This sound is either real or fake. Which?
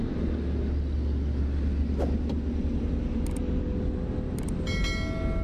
real